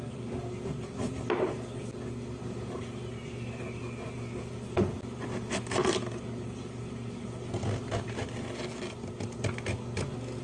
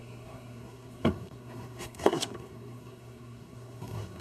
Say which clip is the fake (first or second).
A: second